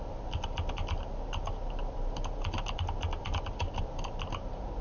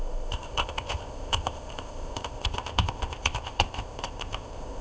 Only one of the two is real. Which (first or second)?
first